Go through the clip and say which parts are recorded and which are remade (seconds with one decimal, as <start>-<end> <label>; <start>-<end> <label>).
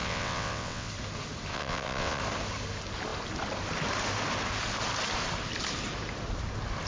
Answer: 0.0-0.9 remade; 0.9-1.5 recorded; 1.5-2.2 remade; 2.2-6.9 recorded